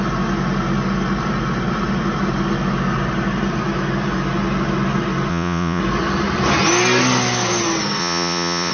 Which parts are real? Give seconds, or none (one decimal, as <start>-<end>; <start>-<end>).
0.0-5.3; 5.8-8.0